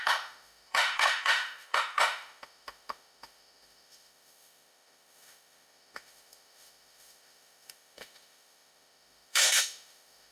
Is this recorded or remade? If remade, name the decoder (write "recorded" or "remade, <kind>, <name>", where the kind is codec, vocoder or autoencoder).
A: remade, autoencoder, DAC-VAE